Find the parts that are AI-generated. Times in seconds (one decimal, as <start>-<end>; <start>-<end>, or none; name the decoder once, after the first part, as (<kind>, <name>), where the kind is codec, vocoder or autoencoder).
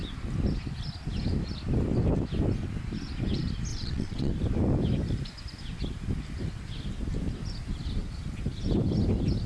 3.7-4.3 (vocoder, WaveNeXt)